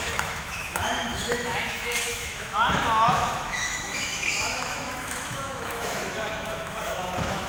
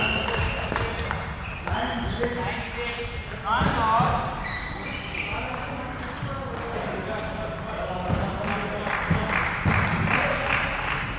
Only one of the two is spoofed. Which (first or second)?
first